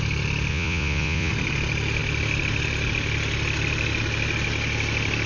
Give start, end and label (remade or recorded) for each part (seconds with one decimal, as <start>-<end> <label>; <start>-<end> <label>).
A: 0.0-0.5 recorded; 0.5-1.3 remade; 1.3-5.3 recorded

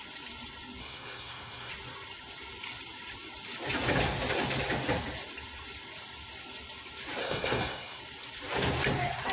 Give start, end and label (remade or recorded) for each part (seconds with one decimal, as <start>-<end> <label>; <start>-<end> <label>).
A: 0.0-0.8 recorded; 0.8-1.7 remade; 1.7-7.2 recorded; 7.2-8.0 remade; 8.0-9.3 recorded